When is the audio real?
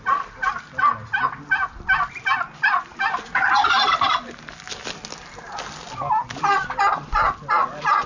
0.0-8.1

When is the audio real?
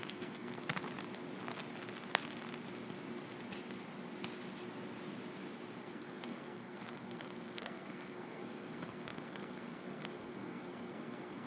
0.6-5.8